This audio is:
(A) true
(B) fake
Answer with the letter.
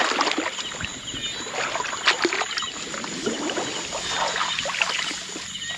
A